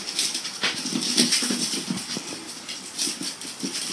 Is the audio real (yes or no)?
yes